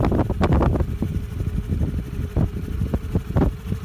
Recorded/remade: recorded